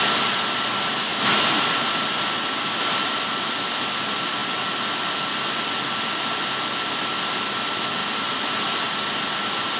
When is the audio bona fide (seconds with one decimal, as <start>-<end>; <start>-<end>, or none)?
0.0-1.1; 3.6-8.0; 8.9-9.8